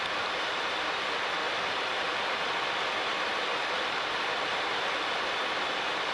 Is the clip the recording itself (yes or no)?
no